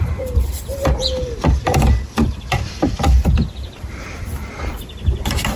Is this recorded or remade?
remade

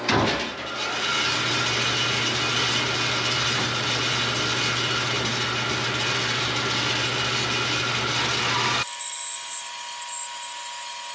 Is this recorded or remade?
recorded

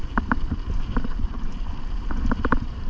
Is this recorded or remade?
remade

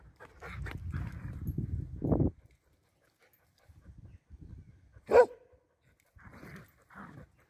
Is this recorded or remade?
recorded